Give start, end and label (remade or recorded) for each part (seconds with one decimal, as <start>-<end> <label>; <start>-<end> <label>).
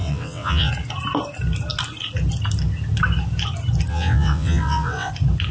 0.0-0.7 remade; 0.7-3.9 recorded; 3.9-5.1 remade; 5.1-5.5 recorded